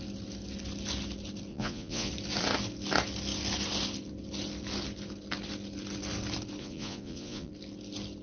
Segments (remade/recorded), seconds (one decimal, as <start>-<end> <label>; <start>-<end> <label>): 0.0-1.5 recorded; 1.5-2.1 remade; 2.1-6.6 recorded; 6.6-7.5 remade; 7.5-8.2 recorded